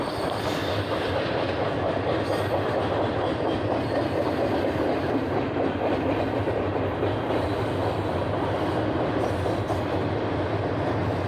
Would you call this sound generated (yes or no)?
yes